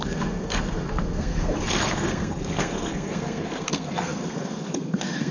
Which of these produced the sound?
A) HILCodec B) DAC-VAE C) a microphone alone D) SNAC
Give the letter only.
D